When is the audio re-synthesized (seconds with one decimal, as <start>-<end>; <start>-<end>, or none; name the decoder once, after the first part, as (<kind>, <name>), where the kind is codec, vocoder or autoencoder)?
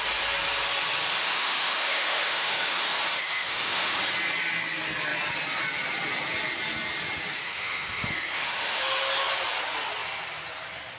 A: 1.1-4.0 (autoencoder, DAC-VAE); 7.4-8.8